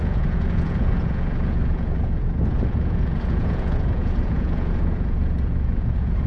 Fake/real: fake